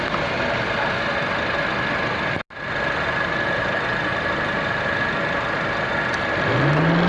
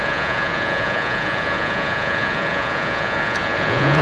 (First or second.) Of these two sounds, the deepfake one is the second